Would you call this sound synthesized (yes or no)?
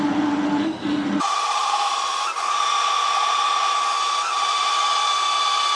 no